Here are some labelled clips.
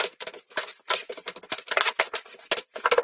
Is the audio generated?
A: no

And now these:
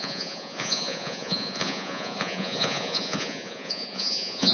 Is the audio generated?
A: yes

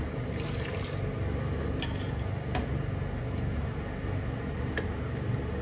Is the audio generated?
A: no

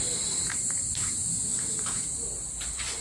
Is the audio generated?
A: no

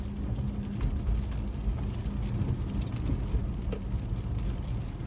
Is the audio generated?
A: no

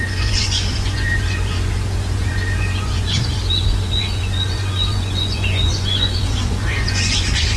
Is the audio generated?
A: yes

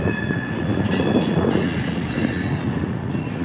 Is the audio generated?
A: yes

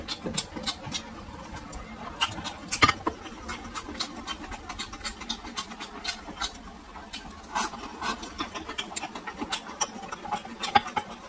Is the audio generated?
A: no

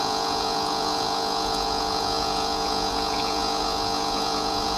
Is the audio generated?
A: yes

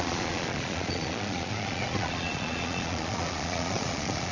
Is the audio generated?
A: yes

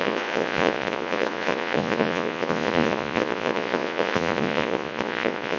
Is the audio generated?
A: yes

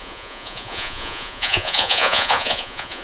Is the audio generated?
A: yes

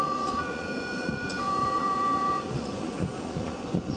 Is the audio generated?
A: yes